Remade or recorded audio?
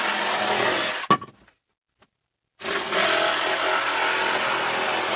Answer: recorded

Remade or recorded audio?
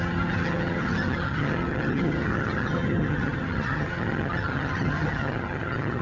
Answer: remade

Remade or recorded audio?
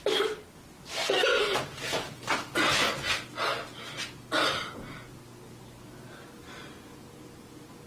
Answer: recorded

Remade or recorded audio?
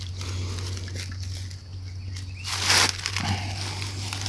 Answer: recorded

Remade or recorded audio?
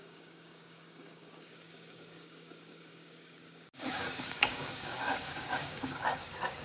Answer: remade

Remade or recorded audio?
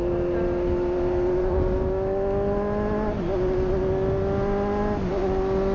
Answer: recorded